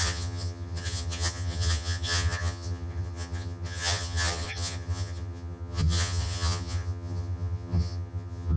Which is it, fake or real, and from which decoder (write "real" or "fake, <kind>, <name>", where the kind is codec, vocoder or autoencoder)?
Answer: fake, vocoder, HiFi-GAN